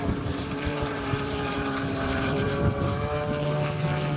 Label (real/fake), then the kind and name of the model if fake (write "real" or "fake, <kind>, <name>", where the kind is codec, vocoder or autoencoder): fake, vocoder, BigVGAN v2